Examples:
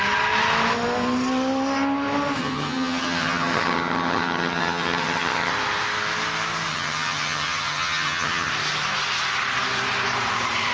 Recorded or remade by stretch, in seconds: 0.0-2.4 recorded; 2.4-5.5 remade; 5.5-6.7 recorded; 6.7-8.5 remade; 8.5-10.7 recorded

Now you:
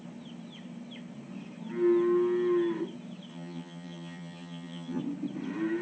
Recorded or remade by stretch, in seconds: 0.0-3.3 recorded; 3.3-5.0 remade; 5.0-5.8 recorded

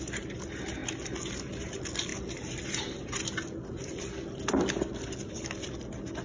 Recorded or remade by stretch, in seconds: 0.0-6.2 recorded

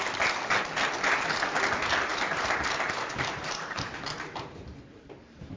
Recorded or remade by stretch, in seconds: 0.0-2.1 recorded; 2.1-5.6 remade

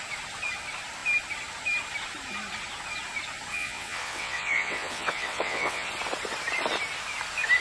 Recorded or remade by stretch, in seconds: 0.0-3.5 recorded; 3.5-5.9 remade; 5.9-7.6 recorded